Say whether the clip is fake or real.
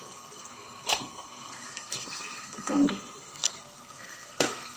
fake